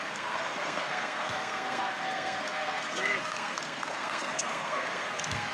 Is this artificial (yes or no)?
yes